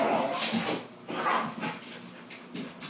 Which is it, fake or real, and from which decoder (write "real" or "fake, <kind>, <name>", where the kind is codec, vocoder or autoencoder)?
real